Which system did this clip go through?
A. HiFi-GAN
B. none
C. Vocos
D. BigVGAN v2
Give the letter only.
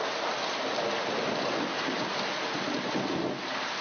B